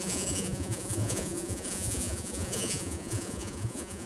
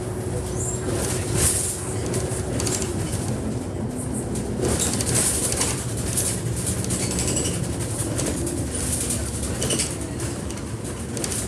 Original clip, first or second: second